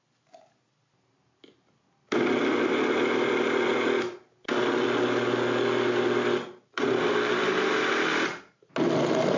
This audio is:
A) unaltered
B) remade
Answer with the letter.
A